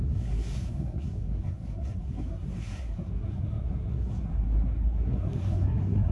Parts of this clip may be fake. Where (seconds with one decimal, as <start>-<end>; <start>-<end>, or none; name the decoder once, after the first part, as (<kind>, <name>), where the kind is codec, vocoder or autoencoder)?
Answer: 0.0-6.1 (codec, SNAC)